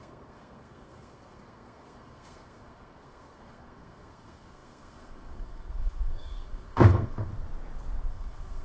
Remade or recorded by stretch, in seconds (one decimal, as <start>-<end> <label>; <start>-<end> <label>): 0.0-7.3 remade; 7.3-8.1 recorded; 8.1-8.6 remade